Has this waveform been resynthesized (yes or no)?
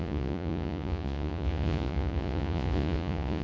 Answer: yes